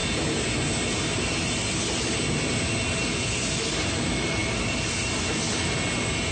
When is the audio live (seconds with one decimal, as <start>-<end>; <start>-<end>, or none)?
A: 0.0-6.3